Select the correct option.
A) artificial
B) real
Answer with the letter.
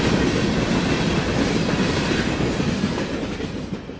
B